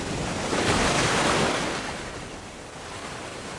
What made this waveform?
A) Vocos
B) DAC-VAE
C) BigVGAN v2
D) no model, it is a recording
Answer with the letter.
D